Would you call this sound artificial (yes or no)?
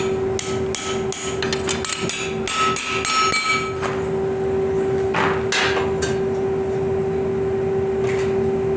no